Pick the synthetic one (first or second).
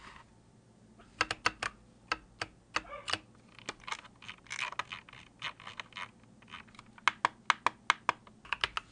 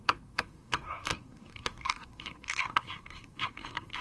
second